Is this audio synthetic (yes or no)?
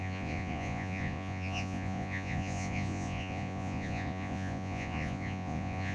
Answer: yes